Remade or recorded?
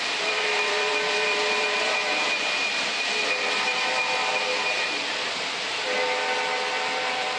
remade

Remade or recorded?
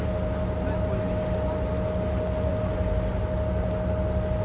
recorded